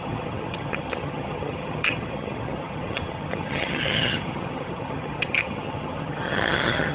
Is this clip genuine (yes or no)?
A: no